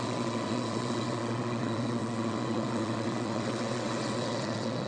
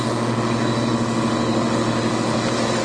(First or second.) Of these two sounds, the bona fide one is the second